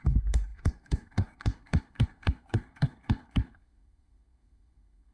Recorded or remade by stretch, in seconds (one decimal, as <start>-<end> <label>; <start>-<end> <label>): 0.0-5.1 remade